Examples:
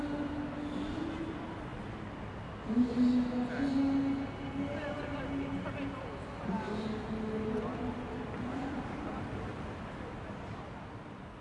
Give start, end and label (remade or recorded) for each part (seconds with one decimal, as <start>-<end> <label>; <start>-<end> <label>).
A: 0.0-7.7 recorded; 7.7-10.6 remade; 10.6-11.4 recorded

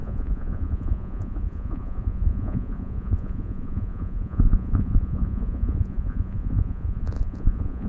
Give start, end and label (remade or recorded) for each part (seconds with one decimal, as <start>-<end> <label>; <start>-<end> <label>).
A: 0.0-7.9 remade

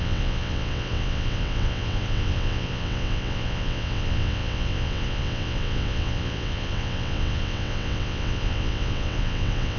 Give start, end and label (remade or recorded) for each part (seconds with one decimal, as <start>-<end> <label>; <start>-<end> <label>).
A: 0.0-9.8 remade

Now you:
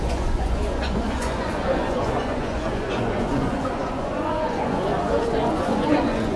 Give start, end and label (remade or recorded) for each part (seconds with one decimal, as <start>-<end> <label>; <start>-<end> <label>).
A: 0.0-6.4 remade

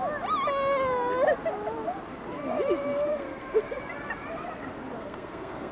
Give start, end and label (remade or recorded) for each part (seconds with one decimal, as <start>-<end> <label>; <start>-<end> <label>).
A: 0.0-3.1 recorded; 3.1-3.8 remade; 3.8-5.0 recorded; 5.0-5.7 remade